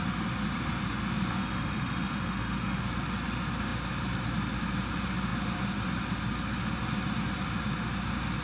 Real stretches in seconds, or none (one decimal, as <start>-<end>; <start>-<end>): 0.0-1.4; 2.8-8.4